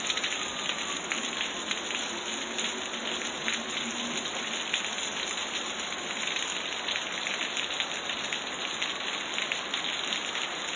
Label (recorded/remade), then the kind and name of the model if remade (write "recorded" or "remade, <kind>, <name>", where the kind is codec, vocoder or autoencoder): recorded